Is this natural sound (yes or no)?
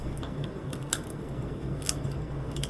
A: no